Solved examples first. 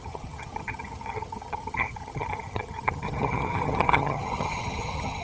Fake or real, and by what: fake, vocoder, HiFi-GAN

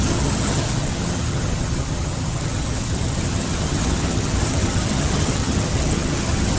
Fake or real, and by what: fake, vocoder, HiFi-GAN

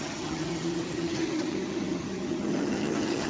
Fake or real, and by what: fake, vocoder, HiFi-GAN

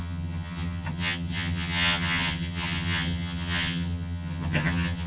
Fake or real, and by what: fake, vocoder, HiFi-GAN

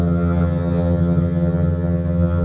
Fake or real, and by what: fake, vocoder, HiFi-GAN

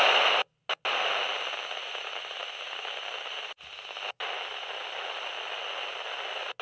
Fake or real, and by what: real